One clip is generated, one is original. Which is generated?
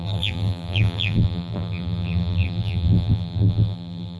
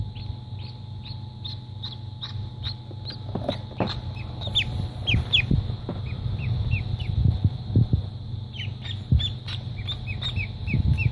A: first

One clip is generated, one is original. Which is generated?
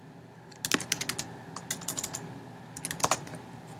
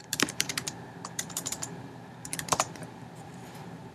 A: second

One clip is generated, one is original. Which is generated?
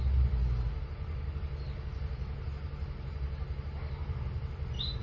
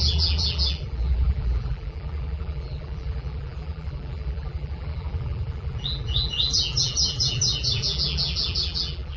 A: second